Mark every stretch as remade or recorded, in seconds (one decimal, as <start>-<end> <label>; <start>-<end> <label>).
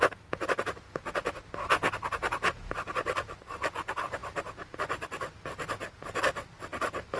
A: 0.0-7.2 recorded